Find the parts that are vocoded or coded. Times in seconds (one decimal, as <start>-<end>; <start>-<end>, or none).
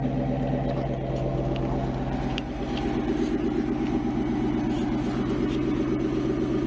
none